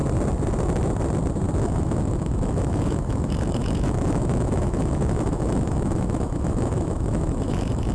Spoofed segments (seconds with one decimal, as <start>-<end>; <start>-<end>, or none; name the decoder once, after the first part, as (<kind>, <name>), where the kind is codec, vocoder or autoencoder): 1.6-7.9 (autoencoder, DAC-VAE)